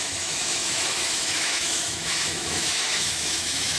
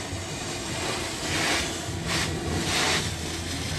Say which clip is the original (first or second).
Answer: second